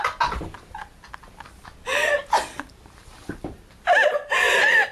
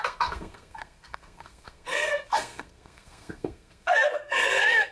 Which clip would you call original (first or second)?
first